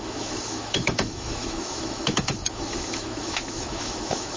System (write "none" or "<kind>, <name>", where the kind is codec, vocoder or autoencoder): autoencoder, DAC-VAE